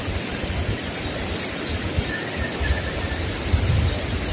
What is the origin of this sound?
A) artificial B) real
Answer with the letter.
B